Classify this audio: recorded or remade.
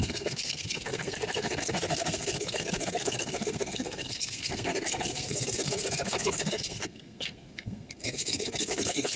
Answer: remade